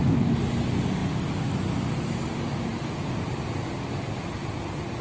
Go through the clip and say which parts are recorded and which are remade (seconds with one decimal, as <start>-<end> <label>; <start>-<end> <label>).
0.0-5.0 recorded